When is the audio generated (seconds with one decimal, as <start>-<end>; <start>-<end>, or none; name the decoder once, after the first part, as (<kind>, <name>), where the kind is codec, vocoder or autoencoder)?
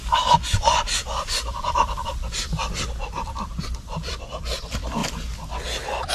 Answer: 0.0-5.0 (vocoder, BigVGAN v2)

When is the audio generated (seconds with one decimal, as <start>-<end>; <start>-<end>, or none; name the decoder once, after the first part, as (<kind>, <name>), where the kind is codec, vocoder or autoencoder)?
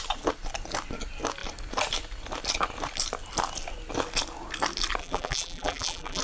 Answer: 5.0-6.2 (vocoder, BigVGAN v2)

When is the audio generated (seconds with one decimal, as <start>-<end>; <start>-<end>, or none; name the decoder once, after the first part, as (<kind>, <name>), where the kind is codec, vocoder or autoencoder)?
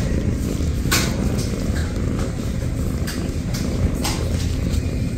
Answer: 0.0-1.8 (vocoder, BigVGAN v2); 2.4-4.0; 4.7-5.2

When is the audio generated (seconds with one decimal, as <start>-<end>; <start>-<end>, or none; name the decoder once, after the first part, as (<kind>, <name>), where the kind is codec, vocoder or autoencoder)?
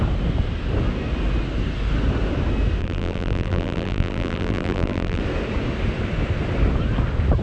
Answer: 2.8-5.2 (vocoder, BigVGAN v2)